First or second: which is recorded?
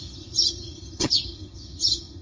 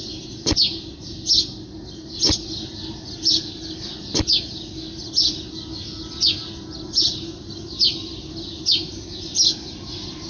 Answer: second